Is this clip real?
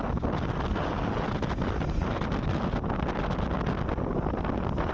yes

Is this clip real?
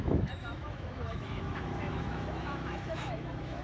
no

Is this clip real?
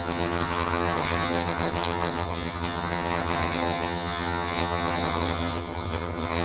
no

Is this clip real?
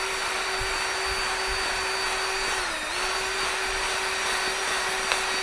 yes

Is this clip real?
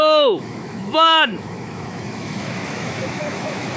no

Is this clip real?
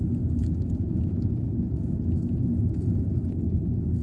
yes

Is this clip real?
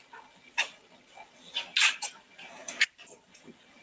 yes